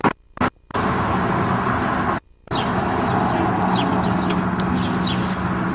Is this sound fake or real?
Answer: real